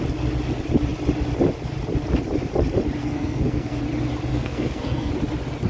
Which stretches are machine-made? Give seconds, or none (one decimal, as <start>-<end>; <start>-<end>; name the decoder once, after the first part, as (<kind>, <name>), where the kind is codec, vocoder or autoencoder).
3.0-3.8 (codec, SNAC); 4.3-5.1

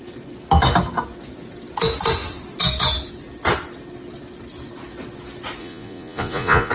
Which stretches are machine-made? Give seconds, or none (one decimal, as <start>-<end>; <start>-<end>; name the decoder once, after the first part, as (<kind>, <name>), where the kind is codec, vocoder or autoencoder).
5.6-6.7 (vocoder, Vocos)

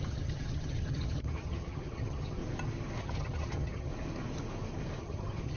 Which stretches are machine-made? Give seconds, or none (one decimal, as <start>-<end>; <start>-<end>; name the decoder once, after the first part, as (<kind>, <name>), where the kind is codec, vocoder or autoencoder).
0.0-2.4 (vocoder, HiFi-GAN); 3.0-3.9; 5.0-5.6